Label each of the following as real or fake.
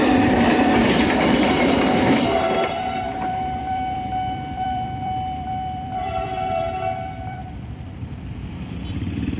fake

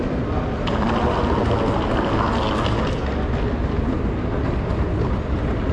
real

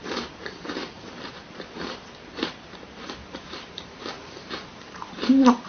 fake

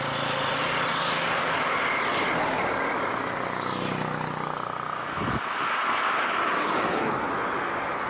real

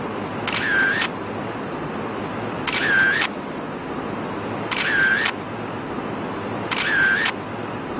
fake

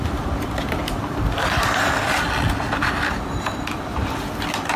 real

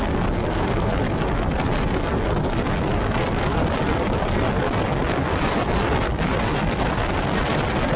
real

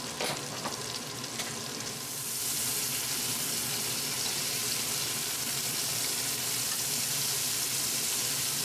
fake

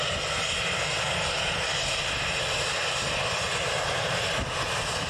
real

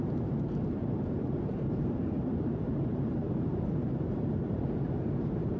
fake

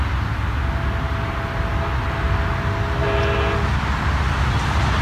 real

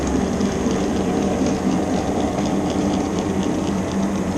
real